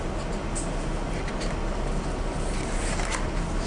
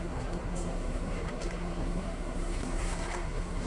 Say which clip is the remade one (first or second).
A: second